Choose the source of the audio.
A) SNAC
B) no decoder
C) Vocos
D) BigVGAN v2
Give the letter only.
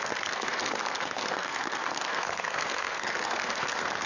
A